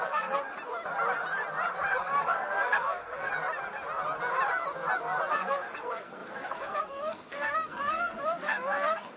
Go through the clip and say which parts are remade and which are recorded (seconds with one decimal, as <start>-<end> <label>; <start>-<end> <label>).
0.0-0.5 remade; 0.5-2.0 recorded; 2.0-3.3 remade; 3.3-5.3 recorded; 5.3-9.2 remade